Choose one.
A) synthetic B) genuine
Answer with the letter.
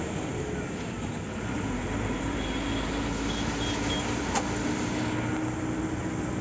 B